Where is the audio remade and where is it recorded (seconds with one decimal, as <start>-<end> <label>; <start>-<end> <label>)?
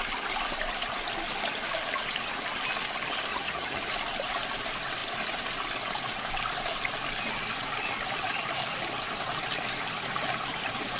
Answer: 0.0-3.3 recorded; 3.3-3.8 remade; 3.8-11.0 recorded